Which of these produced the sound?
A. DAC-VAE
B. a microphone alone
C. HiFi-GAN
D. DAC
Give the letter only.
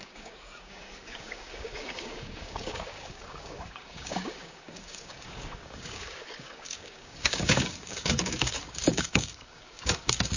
D